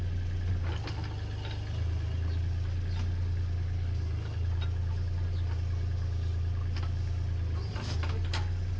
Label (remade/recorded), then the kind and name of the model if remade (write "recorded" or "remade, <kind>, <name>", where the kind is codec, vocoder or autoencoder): recorded